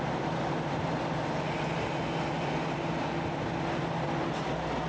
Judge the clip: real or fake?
real